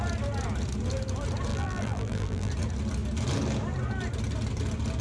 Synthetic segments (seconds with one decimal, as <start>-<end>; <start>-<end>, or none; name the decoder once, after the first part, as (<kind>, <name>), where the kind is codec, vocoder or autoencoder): 1.5-2.5 (vocoder, BigVGAN v2)